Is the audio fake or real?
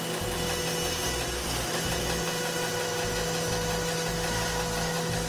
real